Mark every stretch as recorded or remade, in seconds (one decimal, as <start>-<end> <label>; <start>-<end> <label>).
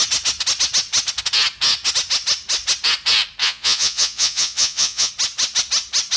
0.0-3.4 recorded; 3.4-5.1 remade; 5.1-6.2 recorded